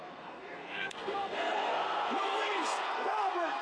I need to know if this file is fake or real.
fake